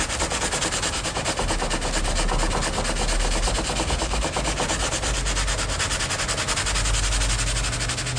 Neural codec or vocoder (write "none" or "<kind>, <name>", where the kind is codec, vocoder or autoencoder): none